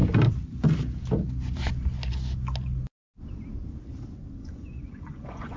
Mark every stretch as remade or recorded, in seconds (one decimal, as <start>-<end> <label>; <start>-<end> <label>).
0.0-4.4 recorded; 4.4-5.6 remade